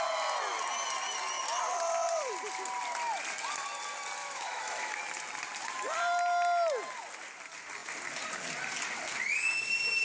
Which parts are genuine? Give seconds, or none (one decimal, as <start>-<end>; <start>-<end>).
0.0-4.2; 5.0-10.0